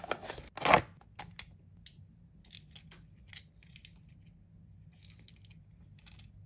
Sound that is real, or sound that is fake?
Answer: real